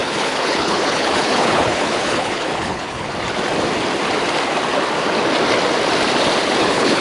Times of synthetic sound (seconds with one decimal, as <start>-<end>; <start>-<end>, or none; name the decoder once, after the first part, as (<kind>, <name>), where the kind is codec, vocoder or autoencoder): 0.0-3.1 (codec, HILCodec); 6.6-7.0